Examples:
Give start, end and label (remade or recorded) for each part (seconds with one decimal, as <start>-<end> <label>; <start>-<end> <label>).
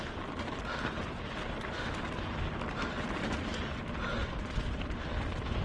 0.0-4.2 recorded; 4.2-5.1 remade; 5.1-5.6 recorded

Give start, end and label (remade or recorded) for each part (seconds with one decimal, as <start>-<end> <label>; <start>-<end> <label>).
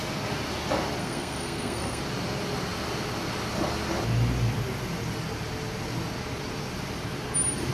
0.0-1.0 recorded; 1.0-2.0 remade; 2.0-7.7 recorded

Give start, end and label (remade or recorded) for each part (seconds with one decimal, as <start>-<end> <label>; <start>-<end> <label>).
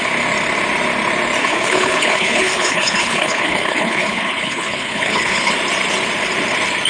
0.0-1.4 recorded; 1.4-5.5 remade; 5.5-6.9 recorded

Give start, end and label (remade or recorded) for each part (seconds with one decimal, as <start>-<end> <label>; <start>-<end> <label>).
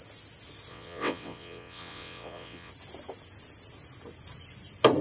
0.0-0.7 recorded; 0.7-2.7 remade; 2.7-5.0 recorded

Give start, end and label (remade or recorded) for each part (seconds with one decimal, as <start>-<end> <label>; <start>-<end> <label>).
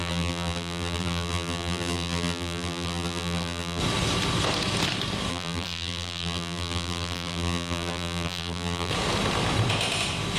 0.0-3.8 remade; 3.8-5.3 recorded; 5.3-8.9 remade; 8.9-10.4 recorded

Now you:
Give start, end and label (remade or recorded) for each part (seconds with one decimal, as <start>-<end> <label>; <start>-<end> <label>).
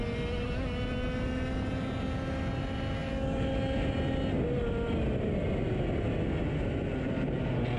0.0-7.8 recorded